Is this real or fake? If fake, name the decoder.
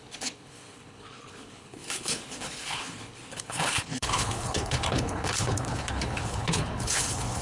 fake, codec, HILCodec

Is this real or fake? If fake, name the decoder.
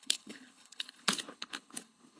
fake, codec, HILCodec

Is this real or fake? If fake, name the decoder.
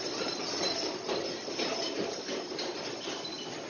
real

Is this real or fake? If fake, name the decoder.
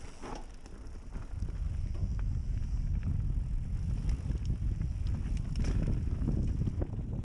real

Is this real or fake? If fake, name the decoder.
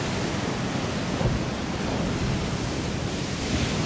real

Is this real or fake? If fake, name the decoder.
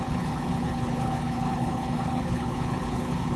fake, codec, HILCodec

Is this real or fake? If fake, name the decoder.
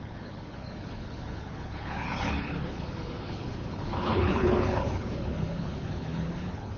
fake, codec, HILCodec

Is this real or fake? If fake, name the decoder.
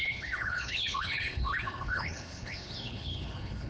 fake, codec, HILCodec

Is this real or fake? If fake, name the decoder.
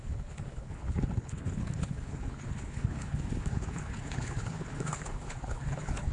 fake, codec, HILCodec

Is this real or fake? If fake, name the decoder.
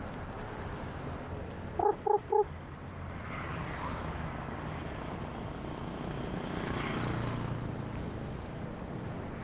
real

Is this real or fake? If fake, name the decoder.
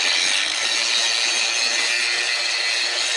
real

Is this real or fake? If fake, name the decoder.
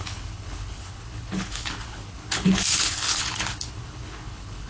fake, codec, HILCodec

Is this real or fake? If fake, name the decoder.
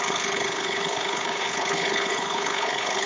fake, codec, HILCodec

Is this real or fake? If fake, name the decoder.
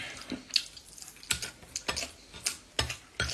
real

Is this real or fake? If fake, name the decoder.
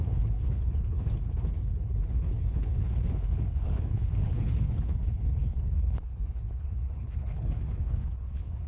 fake, codec, HILCodec